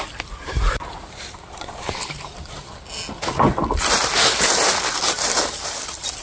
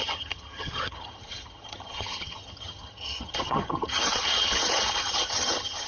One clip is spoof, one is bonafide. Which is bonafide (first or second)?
first